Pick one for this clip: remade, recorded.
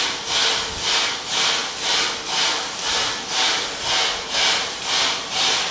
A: recorded